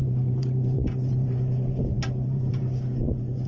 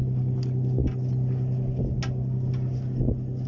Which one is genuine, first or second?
second